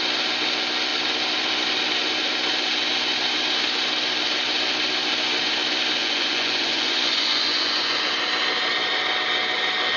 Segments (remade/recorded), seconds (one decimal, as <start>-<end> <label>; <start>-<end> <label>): 0.0-6.0 recorded; 6.0-8.0 remade; 8.0-10.0 recorded